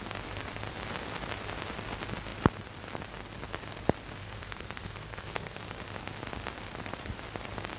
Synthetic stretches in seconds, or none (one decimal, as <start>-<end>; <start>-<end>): 4.2-5.6